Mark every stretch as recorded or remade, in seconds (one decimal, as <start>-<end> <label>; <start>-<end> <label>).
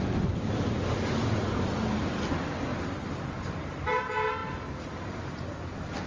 0.0-6.1 recorded